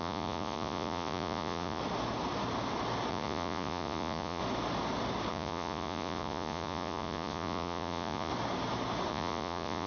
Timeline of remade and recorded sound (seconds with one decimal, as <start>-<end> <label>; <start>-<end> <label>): 0.0-1.8 remade; 1.8-3.1 recorded; 3.1-4.4 remade; 4.4-5.3 recorded; 5.3-8.3 remade; 8.3-9.1 recorded; 9.1-9.9 remade